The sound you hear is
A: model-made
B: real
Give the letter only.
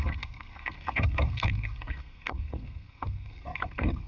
A